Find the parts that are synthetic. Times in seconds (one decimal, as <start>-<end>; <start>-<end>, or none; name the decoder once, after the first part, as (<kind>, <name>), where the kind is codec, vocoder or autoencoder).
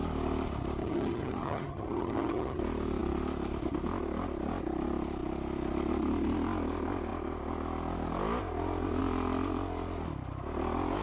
0.8-2.6 (vocoder, HiFi-GAN)